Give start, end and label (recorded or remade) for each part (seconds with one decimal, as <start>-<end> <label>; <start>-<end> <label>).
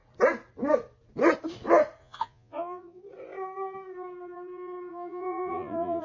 0.0-2.0 recorded; 2.0-3.0 remade; 3.0-4.9 recorded; 4.9-6.0 remade